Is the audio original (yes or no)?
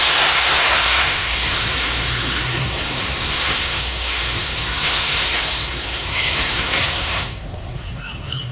no